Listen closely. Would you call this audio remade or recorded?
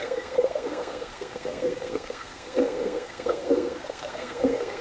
remade